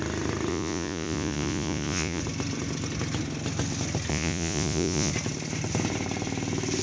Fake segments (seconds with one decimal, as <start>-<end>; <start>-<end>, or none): 0.5-2.2; 4.1-5.1